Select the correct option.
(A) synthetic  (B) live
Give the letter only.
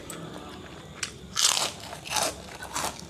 B